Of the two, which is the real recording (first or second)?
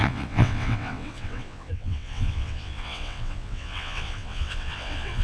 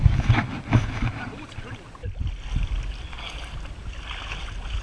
second